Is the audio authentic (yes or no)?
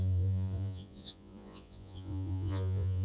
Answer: no